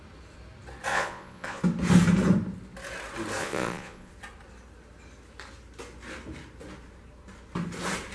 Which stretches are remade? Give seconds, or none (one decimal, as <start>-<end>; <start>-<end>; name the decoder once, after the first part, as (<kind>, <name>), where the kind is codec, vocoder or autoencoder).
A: 0.9-1.6 (vocoder, Vocos); 3.4-4.1